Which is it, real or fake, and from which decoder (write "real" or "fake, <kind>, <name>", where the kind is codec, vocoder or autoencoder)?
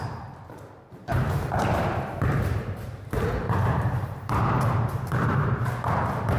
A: fake, vocoder, BigVGAN v2